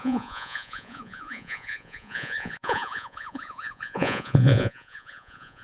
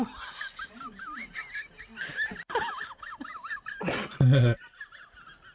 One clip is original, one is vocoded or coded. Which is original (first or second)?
second